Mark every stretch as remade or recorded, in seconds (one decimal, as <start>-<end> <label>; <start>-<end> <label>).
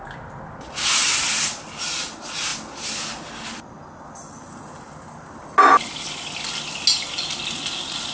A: 0.0-8.1 recorded